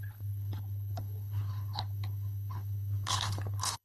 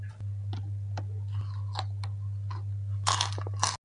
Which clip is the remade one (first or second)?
first